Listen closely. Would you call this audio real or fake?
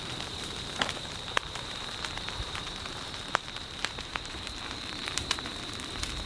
fake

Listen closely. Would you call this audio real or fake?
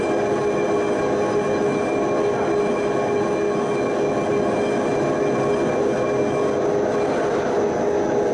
real